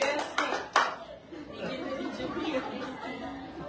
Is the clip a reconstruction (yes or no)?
no